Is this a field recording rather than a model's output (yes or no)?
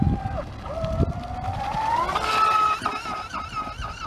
yes